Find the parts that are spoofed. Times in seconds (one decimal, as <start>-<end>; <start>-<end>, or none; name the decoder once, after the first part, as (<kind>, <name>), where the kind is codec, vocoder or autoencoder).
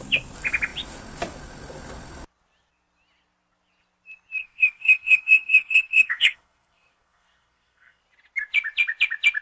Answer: 4.4-8.0 (codec, SNAC)